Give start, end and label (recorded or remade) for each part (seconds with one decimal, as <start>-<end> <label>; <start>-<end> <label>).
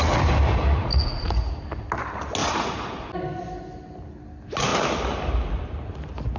0.0-0.6 recorded; 0.6-1.5 remade; 1.5-2.4 recorded; 2.4-3.1 remade; 3.1-6.4 recorded